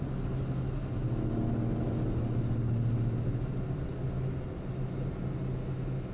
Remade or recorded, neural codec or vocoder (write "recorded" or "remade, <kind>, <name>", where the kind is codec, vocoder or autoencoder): recorded